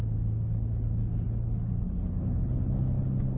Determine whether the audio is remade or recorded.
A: remade